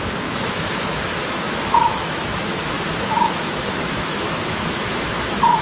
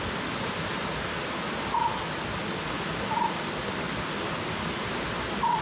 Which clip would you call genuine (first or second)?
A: second